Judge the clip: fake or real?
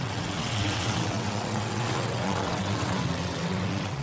fake